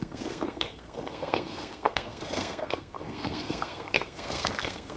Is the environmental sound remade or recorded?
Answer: remade